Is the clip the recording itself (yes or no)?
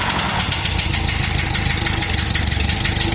yes